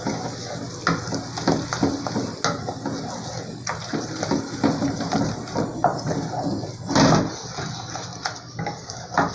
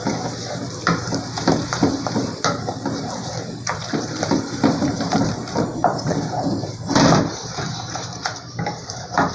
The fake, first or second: second